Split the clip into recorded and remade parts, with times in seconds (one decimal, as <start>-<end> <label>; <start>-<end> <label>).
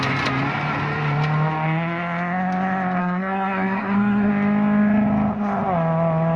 0.0-3.0 recorded; 3.0-4.3 remade; 4.3-6.4 recorded